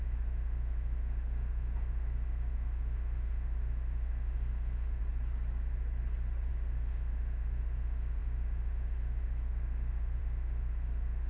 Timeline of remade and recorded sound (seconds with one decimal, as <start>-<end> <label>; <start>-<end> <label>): 0.0-5.0 remade; 5.0-6.5 recorded; 6.5-11.3 remade